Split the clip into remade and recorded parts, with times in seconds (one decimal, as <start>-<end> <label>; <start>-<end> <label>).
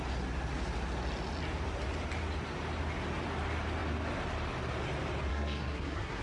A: 0.0-5.3 recorded; 5.3-6.2 remade